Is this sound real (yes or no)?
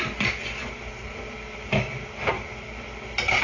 yes